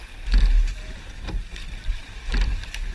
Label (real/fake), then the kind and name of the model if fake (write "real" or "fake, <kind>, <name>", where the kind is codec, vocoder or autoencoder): real